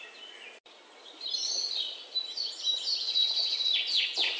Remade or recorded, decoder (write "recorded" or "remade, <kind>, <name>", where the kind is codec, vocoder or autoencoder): recorded